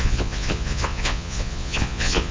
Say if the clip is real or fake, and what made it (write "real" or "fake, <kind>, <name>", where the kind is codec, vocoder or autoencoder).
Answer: fake, vocoder, Vocos